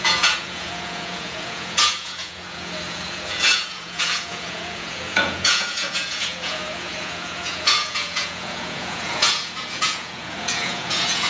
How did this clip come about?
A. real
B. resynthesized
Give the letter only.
B